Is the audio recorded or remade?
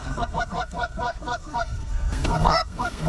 remade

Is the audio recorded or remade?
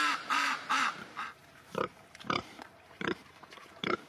remade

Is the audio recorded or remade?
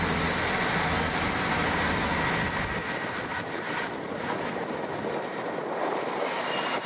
recorded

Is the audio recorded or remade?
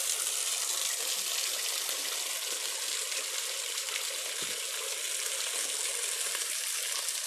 recorded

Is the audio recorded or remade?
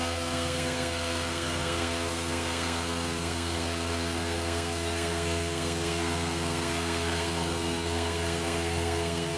remade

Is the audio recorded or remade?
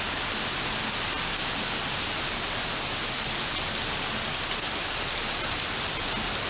recorded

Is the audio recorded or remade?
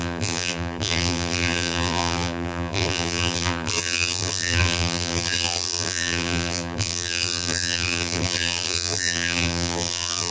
remade